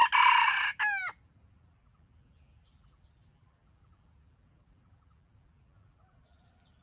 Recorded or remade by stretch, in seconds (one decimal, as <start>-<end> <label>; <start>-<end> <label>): 0.0-1.2 recorded; 1.2-6.8 remade